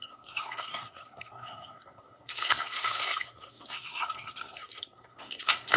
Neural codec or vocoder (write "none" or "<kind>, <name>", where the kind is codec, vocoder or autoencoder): codec, SNAC